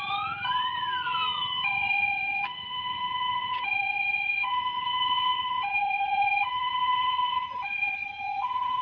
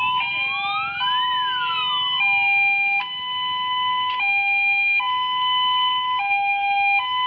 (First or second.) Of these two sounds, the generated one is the first